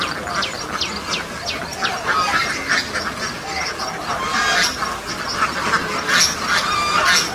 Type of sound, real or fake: real